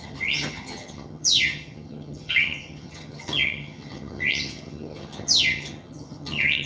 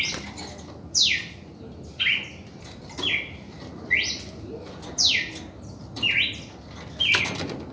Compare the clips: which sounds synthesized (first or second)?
first